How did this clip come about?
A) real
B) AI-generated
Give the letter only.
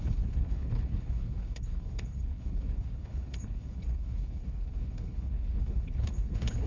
B